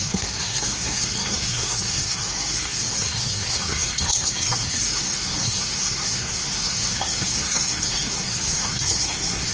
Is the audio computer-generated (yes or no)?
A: yes